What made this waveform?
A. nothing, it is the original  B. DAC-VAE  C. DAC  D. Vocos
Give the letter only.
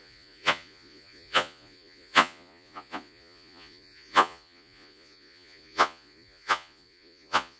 D